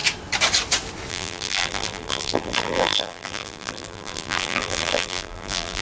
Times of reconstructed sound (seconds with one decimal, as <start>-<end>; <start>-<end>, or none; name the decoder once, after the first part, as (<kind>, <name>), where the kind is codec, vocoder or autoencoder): 1.1-5.8 (vocoder, BigVGAN v2)